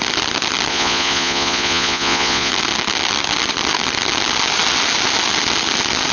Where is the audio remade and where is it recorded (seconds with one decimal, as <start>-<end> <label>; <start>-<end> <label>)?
0.0-0.7 recorded; 0.7-2.5 remade; 2.5-6.1 recorded